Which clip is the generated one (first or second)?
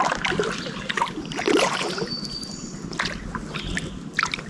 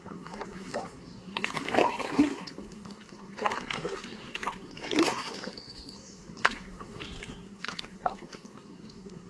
second